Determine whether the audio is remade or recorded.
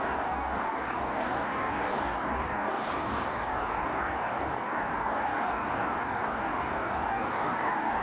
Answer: remade